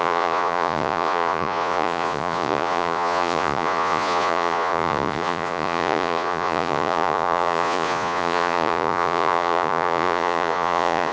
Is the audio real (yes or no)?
no